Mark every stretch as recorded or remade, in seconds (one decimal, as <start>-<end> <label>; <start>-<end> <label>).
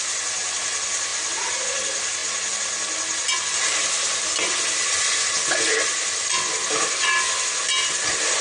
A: 0.0-8.4 recorded